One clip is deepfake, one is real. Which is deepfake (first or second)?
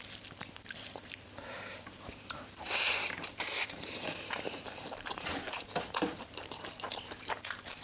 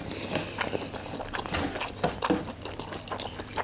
first